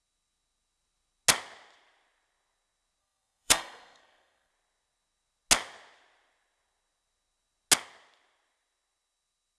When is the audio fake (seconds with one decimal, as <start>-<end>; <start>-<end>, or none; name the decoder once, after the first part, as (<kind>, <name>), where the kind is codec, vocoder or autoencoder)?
3.0-4.5 (codec, SNAC)